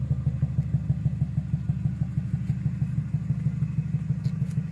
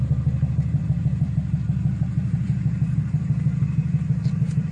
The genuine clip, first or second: first